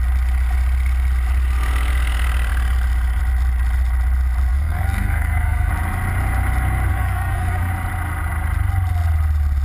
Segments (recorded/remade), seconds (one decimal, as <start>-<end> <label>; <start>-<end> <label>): 0.0-4.5 recorded; 4.5-5.7 remade; 5.7-6.9 recorded; 6.9-7.7 remade; 7.7-9.6 recorded